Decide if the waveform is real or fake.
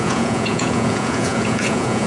fake